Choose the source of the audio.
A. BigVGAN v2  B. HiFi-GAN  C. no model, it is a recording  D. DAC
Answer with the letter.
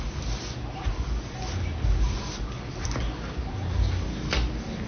C